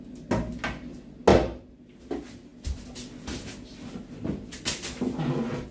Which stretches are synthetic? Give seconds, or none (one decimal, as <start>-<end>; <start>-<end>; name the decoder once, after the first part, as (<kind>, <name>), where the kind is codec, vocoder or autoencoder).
none